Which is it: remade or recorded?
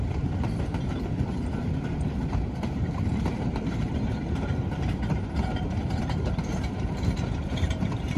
remade